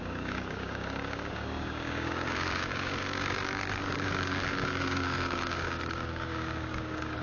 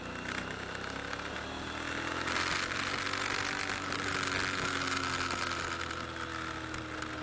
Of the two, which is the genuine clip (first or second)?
second